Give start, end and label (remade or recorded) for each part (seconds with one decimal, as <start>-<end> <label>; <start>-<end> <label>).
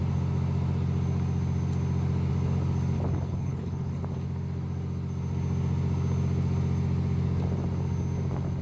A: 0.0-3.3 recorded; 3.3-4.0 remade; 4.0-8.6 recorded